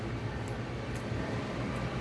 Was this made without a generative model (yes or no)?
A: yes